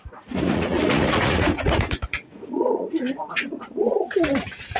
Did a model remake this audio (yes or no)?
yes